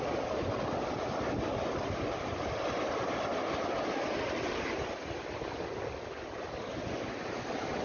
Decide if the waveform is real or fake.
real